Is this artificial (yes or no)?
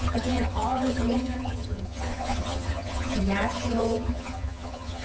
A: yes